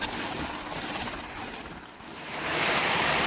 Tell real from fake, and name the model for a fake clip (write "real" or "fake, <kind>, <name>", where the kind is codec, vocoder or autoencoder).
real